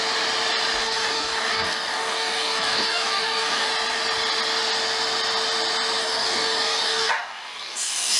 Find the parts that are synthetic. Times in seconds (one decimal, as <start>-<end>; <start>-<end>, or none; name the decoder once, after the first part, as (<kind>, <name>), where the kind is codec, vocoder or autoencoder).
0.8-3.7 (codec, DAC); 6.0-8.2